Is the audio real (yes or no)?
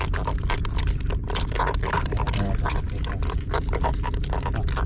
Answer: yes